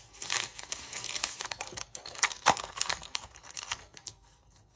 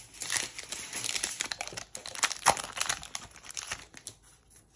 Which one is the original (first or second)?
second